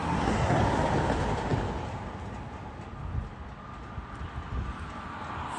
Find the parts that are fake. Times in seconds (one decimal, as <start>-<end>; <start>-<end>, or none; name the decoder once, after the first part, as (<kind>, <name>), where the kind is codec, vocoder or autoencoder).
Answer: 0.0-0.6 (codec, SNAC)